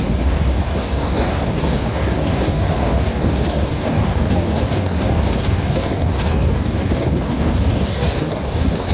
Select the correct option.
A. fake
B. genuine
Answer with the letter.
A